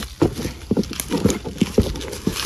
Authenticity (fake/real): real